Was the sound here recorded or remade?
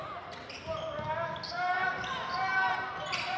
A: recorded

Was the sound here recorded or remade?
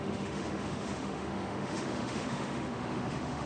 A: remade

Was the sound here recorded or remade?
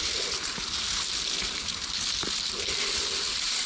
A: recorded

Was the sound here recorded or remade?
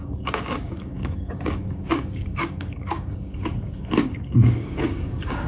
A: remade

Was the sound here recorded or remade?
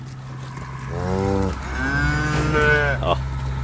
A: recorded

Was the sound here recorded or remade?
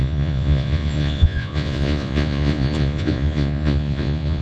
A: remade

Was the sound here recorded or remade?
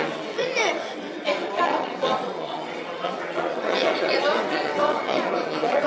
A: remade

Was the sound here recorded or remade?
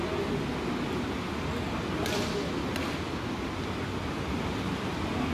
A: recorded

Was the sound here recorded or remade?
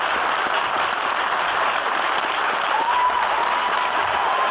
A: remade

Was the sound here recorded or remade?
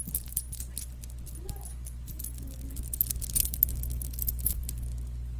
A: recorded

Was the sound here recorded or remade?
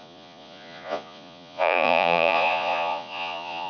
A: remade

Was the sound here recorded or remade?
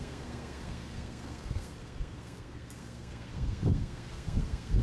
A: remade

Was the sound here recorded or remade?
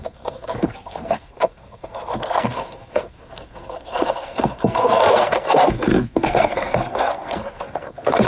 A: remade